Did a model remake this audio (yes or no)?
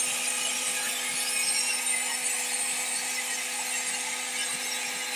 no